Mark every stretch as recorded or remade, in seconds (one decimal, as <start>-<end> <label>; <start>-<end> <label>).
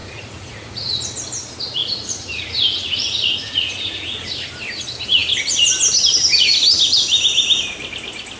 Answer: 0.0-1.0 remade; 1.0-1.8 recorded; 1.8-4.5 remade; 4.5-8.4 recorded